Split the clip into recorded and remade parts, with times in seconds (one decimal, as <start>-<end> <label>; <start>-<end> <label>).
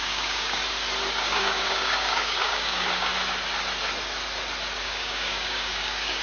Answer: 0.0-0.6 remade; 0.6-1.1 recorded; 1.1-3.1 remade; 3.1-4.8 recorded; 4.8-6.2 remade